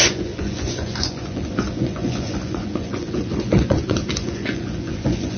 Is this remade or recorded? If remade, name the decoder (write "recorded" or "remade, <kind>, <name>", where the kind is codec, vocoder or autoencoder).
remade, vocoder, Vocos